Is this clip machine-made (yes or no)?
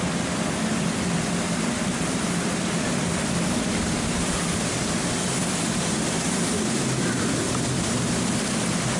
yes